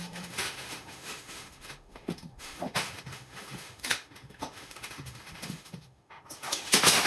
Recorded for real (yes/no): no